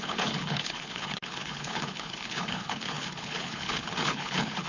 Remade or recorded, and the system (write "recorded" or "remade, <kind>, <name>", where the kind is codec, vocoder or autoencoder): remade, codec, HILCodec